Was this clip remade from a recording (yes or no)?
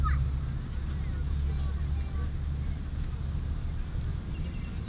no